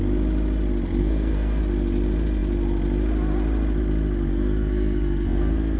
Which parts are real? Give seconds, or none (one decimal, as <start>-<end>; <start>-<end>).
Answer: 0.0-1.0; 1.6-4.3